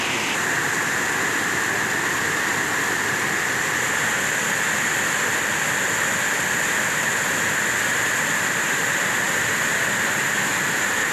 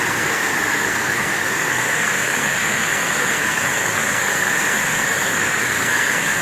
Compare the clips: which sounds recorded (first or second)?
first